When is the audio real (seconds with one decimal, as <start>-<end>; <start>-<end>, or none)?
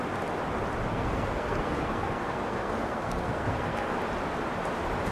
0.0-0.9; 4.0-5.1